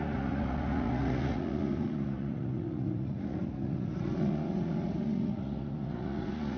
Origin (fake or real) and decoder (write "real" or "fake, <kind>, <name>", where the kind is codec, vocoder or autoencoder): fake, vocoder, Vocos